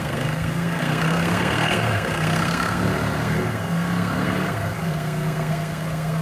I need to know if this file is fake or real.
fake